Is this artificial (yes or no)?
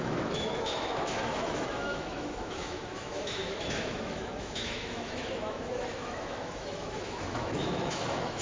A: yes